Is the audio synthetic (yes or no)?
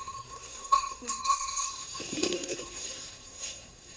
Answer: yes